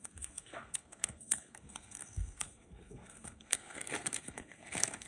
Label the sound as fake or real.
fake